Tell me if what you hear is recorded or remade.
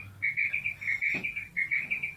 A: recorded